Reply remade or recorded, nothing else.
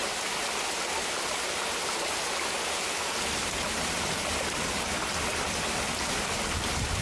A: recorded